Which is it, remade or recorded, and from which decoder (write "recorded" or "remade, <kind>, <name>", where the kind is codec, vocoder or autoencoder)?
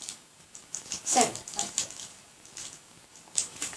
remade, codec, DAC